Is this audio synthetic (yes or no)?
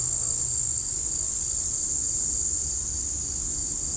no